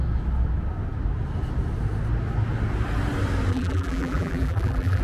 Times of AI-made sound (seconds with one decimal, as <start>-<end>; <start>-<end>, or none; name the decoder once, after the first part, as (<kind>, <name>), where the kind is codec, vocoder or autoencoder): 3.5-5.0 (vocoder, BigVGAN v2)